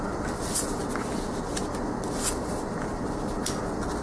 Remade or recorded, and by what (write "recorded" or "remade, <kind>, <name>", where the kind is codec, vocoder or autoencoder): recorded